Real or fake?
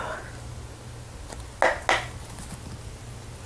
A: real